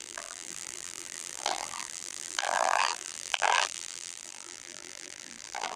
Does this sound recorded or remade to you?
remade